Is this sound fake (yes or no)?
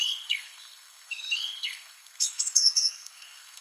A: yes